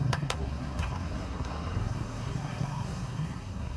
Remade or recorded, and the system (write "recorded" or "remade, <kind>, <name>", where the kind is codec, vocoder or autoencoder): remade, codec, SNAC